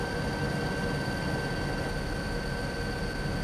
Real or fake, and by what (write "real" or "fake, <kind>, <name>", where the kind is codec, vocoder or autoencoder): real